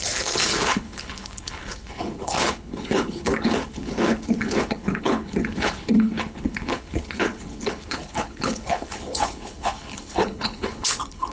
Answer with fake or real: fake